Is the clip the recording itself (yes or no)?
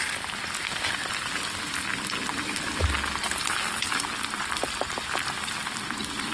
yes